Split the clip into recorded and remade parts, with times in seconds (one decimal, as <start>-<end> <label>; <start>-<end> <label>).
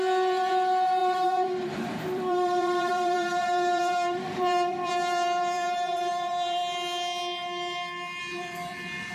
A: 0.0-6.6 remade; 6.6-8.2 recorded; 8.2-9.1 remade